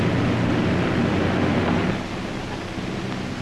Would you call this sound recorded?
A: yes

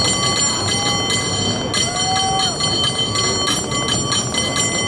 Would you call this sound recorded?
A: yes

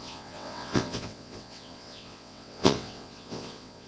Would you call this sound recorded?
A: no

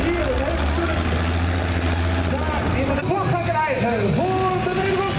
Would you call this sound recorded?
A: yes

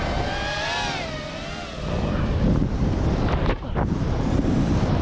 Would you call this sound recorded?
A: yes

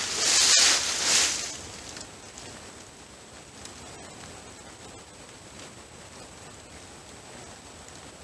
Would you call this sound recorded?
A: yes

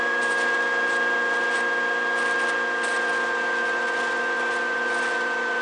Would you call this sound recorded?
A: yes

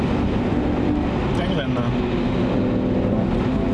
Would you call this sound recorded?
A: yes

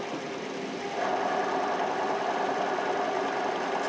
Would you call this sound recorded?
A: yes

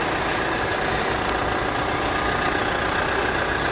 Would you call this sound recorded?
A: yes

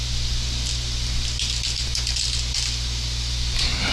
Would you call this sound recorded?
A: yes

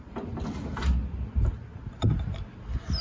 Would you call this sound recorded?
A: yes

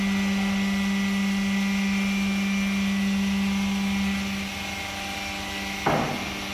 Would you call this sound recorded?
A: yes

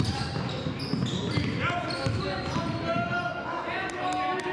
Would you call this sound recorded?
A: yes